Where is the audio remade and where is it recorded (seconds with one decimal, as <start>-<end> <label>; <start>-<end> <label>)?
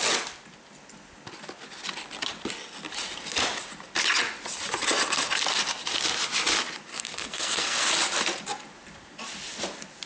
0.0-6.9 recorded; 6.9-7.9 remade; 7.9-10.1 recorded